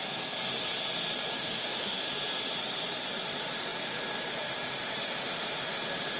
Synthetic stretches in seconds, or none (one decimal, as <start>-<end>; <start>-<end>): 1.4-2.1